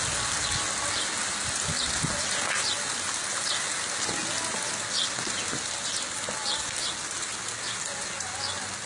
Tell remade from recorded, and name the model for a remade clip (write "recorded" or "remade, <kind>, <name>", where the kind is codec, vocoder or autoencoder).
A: recorded